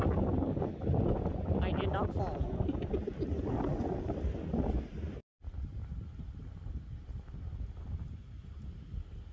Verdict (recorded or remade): recorded